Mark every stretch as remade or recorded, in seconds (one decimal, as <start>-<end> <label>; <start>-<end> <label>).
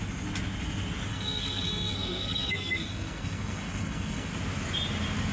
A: 0.0-1.1 recorded; 1.1-4.3 remade; 4.3-5.3 recorded